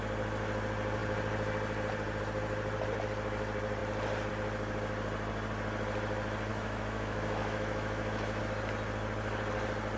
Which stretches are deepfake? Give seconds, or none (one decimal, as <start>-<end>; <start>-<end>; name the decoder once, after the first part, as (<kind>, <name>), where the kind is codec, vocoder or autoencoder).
6.5-8.4 (autoencoder, DAC-VAE)